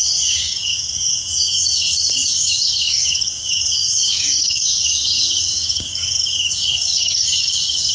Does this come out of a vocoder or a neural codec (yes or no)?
yes